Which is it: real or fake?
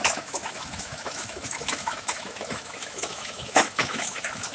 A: fake